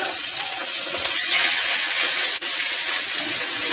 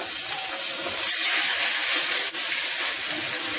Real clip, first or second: second